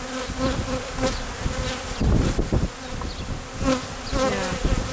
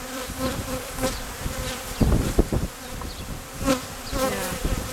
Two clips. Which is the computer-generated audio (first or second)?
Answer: second